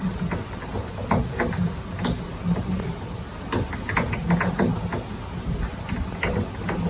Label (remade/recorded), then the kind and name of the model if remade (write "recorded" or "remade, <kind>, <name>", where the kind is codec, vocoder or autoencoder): recorded